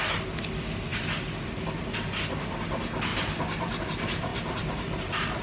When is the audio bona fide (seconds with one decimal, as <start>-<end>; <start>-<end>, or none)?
0.0-3.1; 3.8-4.3